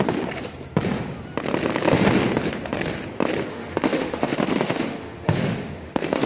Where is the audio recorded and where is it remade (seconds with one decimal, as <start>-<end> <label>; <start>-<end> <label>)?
0.0-3.5 recorded; 3.5-6.3 remade